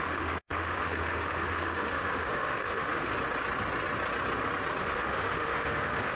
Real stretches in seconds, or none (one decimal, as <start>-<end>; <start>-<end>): 3.1-4.8